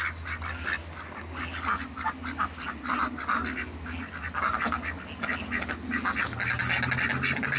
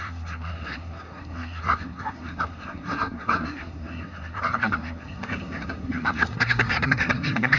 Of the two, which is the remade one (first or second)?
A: second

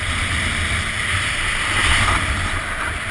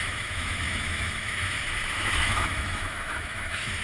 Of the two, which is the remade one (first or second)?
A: second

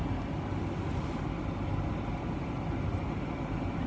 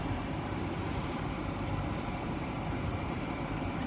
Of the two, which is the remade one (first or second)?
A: second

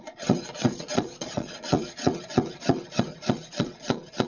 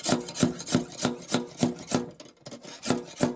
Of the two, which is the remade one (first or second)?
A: first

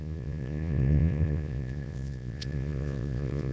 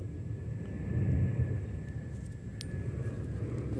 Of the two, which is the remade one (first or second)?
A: first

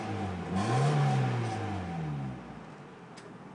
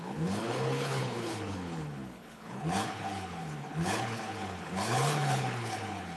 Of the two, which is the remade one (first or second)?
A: second